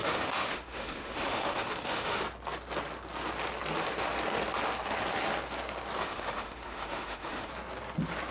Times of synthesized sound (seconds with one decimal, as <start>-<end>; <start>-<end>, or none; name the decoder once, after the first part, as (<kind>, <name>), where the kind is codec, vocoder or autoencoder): 0.0-2.2 (autoencoder, DAC-VAE); 6.0-7.5